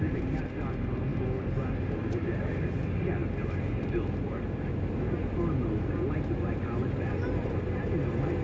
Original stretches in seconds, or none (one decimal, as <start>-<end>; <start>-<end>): 0.0-8.4